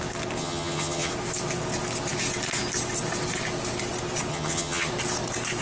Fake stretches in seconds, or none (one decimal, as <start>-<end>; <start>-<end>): 0.4-1.1; 4.3-4.9